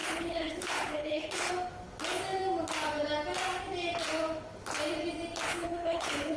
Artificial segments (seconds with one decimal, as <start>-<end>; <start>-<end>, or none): 0.0-1.5; 5.5-6.4